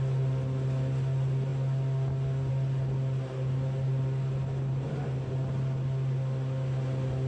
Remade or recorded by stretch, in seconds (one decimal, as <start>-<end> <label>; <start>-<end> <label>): 0.0-7.3 recorded